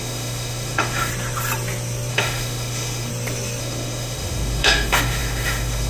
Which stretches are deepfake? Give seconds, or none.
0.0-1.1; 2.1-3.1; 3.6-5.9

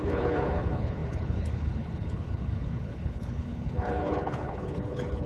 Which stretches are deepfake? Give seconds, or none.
0.0-5.3

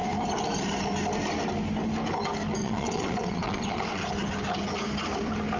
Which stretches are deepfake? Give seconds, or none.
2.6-4.0

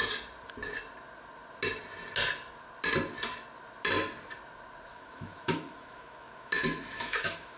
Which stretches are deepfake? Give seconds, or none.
4.9-7.6

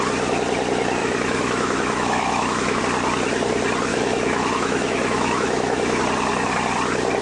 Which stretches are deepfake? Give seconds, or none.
1.0-2.8; 3.9-6.0

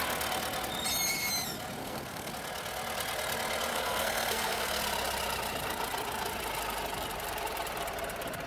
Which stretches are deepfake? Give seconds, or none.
1.8-2.3; 3.7-4.8